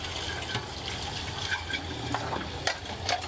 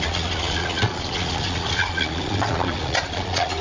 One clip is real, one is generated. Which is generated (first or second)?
second